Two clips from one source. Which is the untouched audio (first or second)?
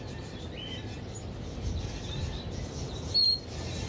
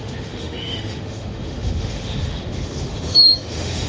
first